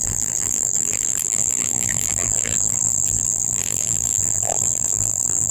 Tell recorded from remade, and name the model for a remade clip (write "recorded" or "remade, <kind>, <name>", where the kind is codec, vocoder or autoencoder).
remade, vocoder, BigVGAN v2